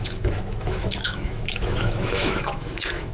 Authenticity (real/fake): fake